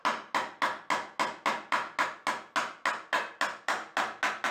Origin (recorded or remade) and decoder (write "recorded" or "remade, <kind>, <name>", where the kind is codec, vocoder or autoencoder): recorded